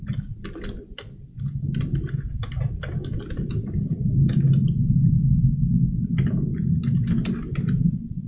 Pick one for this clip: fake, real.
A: real